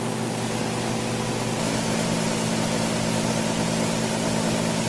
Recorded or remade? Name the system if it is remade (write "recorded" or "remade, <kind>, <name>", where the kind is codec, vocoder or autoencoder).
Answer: recorded